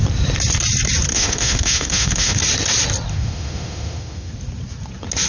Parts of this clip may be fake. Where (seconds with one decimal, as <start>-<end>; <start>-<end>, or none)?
1.1-2.4; 3.1-4.3